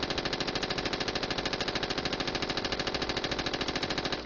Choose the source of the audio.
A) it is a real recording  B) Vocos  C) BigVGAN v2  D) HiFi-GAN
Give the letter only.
A